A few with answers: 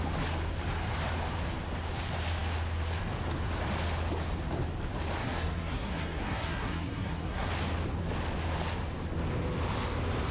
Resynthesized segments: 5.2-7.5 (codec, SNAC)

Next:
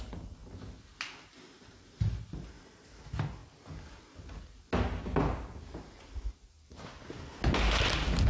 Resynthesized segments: none

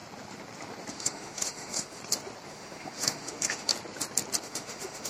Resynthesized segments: 0.9-2.0 (autoencoder, DAC-VAE); 2.5-3.7; 4.4-5.1

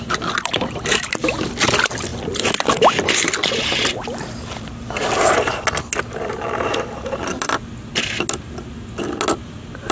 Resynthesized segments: none

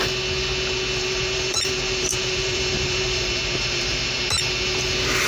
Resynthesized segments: 1.0-4.2 (vocoder, BigVGAN v2)